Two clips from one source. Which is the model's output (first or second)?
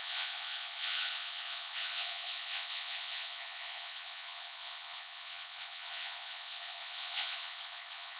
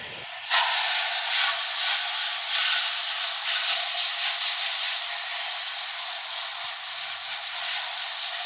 first